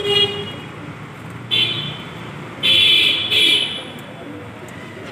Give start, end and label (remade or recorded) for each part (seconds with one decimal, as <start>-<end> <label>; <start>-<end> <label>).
0.0-5.1 recorded